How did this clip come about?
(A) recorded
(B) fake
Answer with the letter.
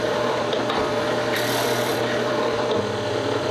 B